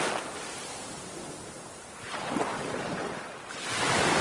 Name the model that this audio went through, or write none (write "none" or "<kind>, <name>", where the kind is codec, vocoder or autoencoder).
none